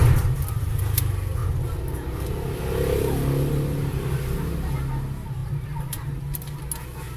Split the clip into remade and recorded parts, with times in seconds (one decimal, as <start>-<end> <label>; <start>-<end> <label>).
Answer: 0.0-7.2 recorded